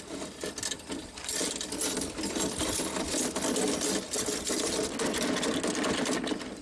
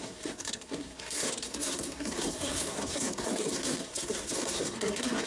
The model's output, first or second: second